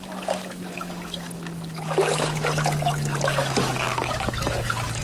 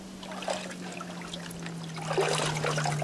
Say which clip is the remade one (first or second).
first